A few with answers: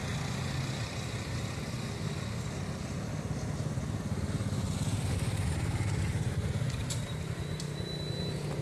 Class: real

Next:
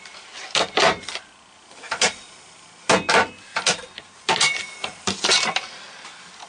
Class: real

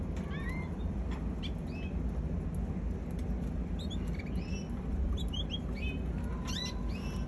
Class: real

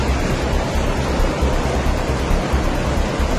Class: real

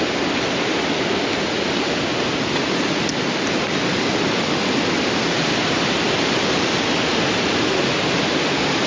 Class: real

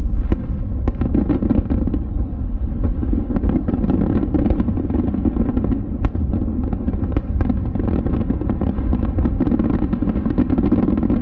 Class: real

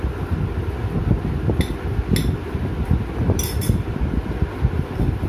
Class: real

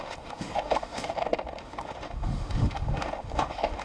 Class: fake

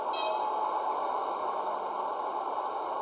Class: real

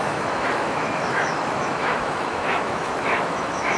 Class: fake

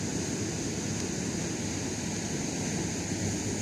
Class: real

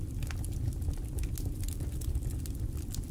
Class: real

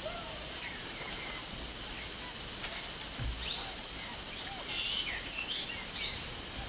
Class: real